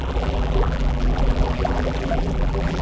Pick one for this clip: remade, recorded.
remade